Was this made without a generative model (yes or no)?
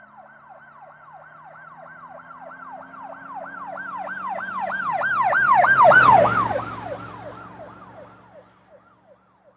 yes